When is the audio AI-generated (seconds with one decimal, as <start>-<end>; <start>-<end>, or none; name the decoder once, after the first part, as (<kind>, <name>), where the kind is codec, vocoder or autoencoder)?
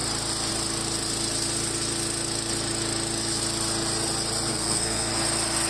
4.5-5.1 (codec, SNAC)